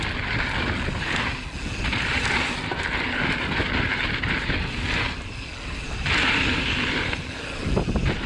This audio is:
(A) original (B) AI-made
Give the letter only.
A